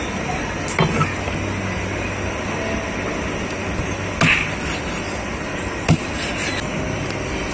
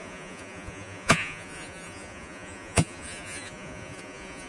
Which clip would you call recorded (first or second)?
first